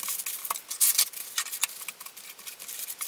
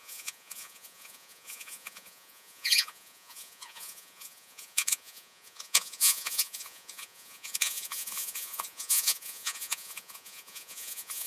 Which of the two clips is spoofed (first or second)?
second